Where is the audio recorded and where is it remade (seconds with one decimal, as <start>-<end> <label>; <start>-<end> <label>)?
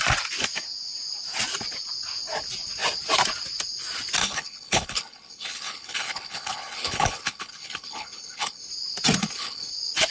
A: 0.0-4.2 recorded; 4.2-8.7 remade; 8.7-9.2 recorded; 9.2-9.7 remade; 9.7-10.1 recorded